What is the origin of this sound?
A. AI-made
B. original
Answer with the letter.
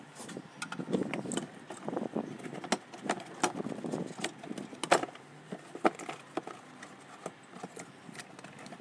B